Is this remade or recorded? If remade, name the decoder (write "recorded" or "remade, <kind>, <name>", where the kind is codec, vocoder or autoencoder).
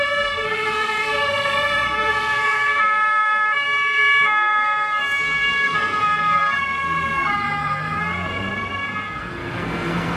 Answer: remade, codec, SNAC